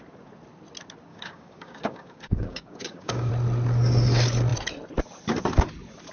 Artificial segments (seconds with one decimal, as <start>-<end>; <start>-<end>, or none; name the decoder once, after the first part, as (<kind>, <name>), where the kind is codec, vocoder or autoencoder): 1.1-3.3 (codec, DAC)